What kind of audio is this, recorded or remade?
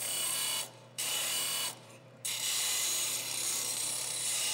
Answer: remade